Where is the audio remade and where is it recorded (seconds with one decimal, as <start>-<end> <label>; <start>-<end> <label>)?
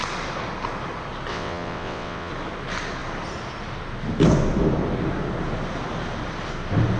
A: 0.0-1.3 recorded; 1.3-2.3 remade; 2.3-7.0 recorded